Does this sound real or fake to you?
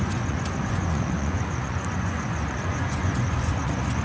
fake